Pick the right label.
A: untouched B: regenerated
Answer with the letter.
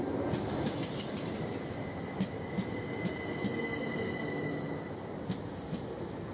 A